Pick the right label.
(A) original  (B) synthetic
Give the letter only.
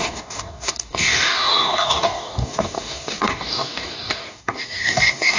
B